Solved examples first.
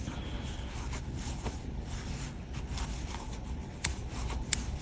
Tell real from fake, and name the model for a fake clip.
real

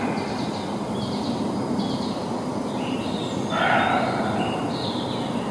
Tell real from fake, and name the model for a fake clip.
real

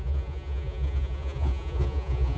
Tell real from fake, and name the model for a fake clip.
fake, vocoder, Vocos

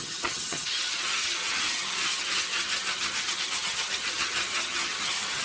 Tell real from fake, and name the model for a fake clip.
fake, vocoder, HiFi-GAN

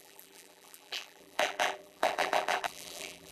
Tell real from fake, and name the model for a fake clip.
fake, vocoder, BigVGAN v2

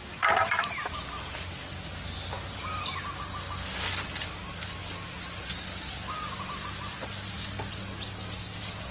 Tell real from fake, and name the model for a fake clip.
real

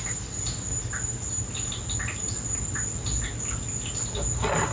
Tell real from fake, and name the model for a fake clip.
real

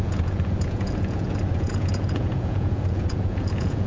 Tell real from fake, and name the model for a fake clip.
fake, vocoder, Vocos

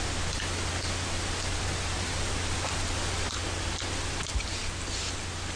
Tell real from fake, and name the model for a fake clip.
real